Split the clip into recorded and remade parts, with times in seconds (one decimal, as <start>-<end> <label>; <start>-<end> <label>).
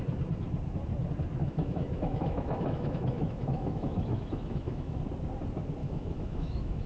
0.0-1.4 recorded; 1.4-5.0 remade; 5.0-5.8 recorded; 5.8-6.9 remade